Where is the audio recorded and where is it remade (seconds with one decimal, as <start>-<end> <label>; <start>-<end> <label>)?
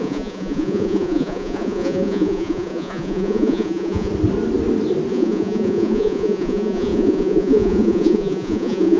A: 0.0-4.1 remade; 4.1-5.1 recorded; 5.1-9.0 remade